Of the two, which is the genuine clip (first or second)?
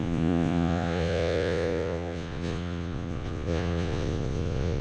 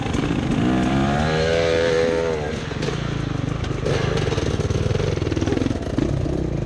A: second